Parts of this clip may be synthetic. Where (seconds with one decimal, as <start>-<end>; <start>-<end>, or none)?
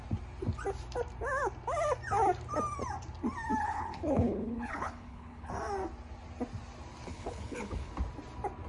3.6-5.5; 7.1-7.9